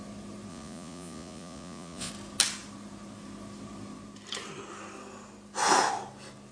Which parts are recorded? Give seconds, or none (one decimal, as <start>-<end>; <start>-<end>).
0.0-0.5; 2.1-6.5